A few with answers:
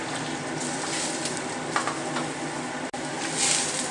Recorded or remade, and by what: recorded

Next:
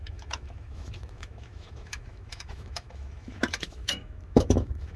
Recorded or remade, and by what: remade, autoencoder, DAC-VAE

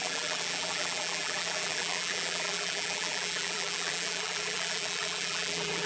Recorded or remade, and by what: remade, vocoder, BigVGAN v2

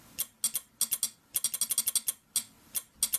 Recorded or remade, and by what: recorded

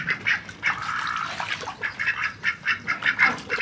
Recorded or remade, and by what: recorded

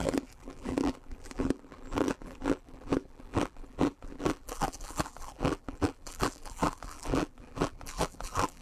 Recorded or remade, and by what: remade, vocoder, BigVGAN v2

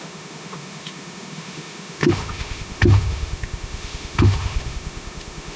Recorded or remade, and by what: remade, autoencoder, DAC-VAE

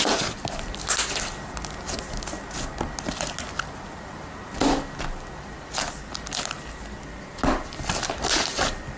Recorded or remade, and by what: recorded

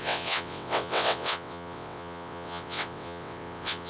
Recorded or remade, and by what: remade, vocoder, WaveNeXt